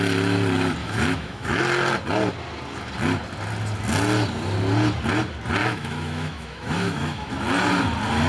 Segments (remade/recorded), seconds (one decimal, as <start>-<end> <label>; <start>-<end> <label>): 0.0-0.8 recorded; 0.8-1.6 remade; 1.6-5.6 recorded; 5.6-7.3 remade; 7.3-8.3 recorded